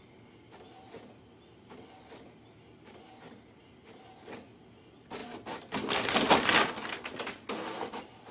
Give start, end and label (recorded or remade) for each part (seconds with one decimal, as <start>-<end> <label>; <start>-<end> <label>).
0.0-8.3 recorded